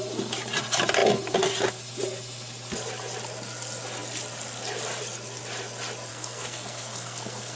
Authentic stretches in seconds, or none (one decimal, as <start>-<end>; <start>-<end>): 0.0-6.1